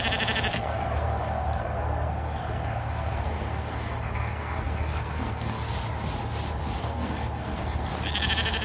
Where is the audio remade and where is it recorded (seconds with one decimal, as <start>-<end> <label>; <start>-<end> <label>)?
0.0-0.5 recorded; 0.5-5.6 remade; 5.6-6.8 recorded; 6.8-7.9 remade; 7.9-8.6 recorded